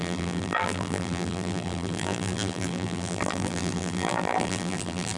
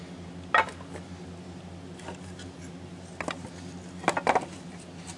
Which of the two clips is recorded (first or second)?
second